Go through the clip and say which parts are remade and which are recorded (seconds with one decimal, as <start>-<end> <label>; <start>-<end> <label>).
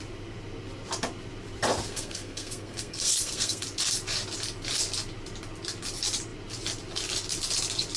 0.0-1.9 recorded; 1.9-3.6 remade; 3.6-8.0 recorded